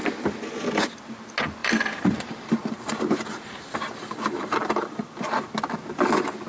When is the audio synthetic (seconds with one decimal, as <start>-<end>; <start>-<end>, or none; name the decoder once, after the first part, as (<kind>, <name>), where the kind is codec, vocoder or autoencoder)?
1.6-5.5 (vocoder, BigVGAN v2)